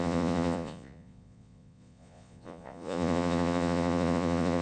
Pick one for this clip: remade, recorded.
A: remade